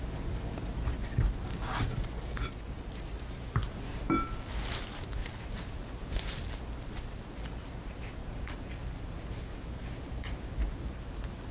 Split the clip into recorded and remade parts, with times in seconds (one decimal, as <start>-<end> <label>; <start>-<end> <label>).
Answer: 0.0-5.2 recorded; 5.2-6.6 remade; 6.6-8.2 recorded; 8.2-8.7 remade; 8.7-9.5 recorded; 9.5-10.7 remade; 10.7-11.5 recorded